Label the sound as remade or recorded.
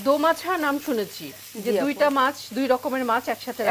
recorded